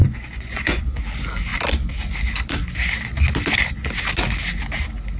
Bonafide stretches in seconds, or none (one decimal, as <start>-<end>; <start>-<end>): 0.8-5.2